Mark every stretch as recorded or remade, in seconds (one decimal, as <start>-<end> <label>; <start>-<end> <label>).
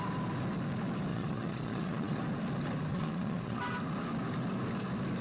0.0-1.1 recorded; 1.1-2.2 remade; 2.2-2.9 recorded; 2.9-3.6 remade; 3.6-5.2 recorded